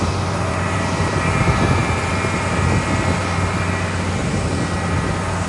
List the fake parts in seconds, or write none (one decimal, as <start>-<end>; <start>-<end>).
0.0-1.8; 5.1-5.5